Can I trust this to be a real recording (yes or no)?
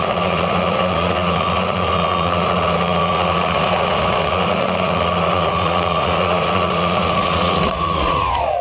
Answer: no